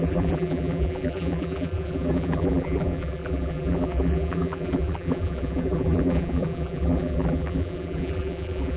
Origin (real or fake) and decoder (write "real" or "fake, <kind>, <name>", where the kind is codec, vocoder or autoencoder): fake, vocoder, BigVGAN v2